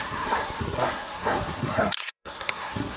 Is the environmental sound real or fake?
fake